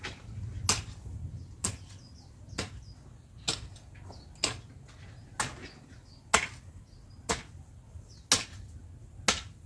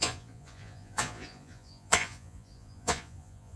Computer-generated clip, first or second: second